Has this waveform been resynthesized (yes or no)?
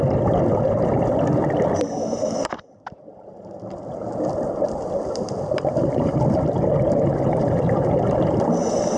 no